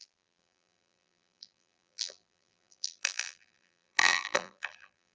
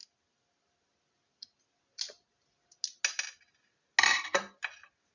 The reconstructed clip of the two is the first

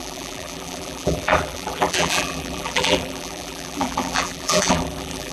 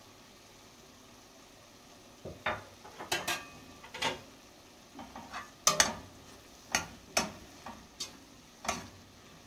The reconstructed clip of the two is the first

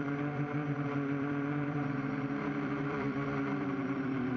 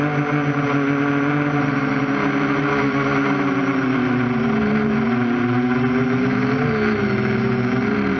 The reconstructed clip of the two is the first